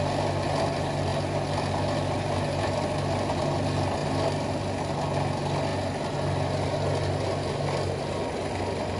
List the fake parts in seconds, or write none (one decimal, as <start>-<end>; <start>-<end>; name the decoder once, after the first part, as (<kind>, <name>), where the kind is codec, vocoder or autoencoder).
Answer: none